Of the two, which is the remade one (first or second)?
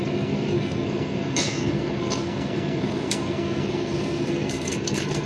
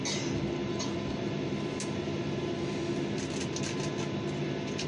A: first